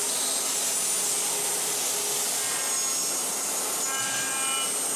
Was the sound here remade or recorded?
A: recorded